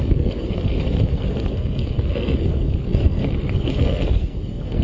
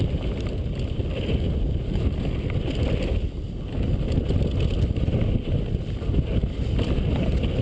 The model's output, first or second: first